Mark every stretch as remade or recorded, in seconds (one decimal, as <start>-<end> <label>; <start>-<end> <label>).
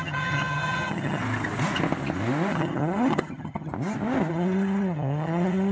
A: 0.0-1.2 remade; 1.2-2.5 recorded; 2.5-3.7 remade; 3.7-4.3 recorded; 4.3-5.7 remade